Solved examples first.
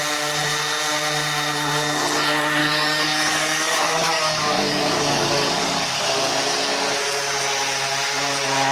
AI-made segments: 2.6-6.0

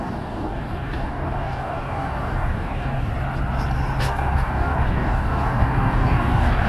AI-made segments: 0.0-3.1; 4.0-6.7

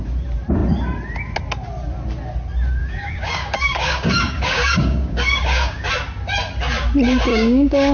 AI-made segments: 2.8-5.9; 7.3-7.9